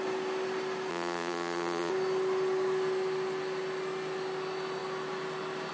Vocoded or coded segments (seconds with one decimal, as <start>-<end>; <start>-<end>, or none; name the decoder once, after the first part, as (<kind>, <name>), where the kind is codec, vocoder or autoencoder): 0.9-1.9 (vocoder, Vocos)